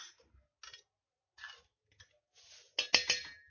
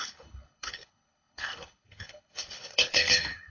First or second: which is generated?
second